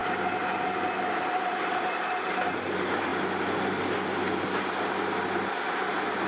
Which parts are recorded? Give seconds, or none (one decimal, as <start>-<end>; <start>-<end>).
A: 0.0-6.3